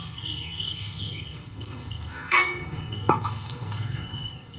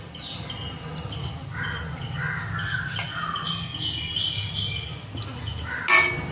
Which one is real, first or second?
second